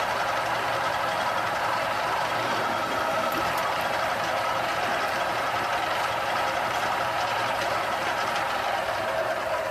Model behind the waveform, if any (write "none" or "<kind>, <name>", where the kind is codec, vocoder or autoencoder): vocoder, BigVGAN v2